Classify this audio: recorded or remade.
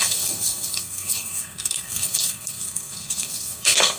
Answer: remade